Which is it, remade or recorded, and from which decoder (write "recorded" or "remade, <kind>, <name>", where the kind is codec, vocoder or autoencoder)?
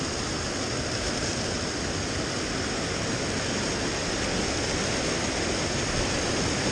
recorded